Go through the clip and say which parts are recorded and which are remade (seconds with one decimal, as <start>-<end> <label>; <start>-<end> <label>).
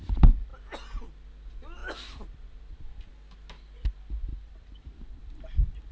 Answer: 0.0-5.9 recorded